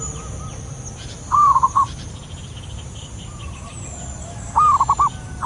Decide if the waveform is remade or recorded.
recorded